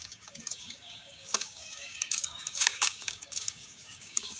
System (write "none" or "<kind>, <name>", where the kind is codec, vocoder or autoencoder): codec, DAC